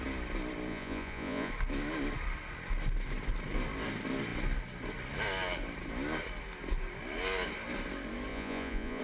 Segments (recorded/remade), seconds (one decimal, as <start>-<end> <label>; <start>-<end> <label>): 0.0-0.7 recorded; 0.7-1.5 remade; 1.5-8.3 recorded; 8.3-9.0 remade